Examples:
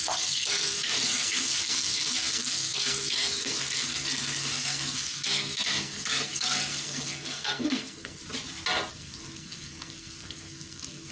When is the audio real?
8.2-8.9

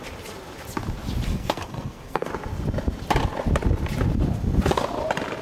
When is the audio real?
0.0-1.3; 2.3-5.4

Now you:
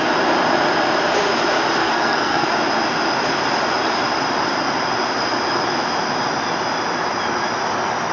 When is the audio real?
0.0-1.8; 2.5-8.1

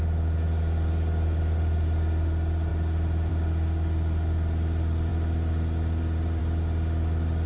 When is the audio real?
0.0-7.5